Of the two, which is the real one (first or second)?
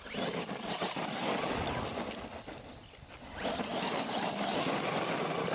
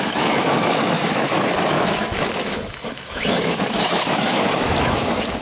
first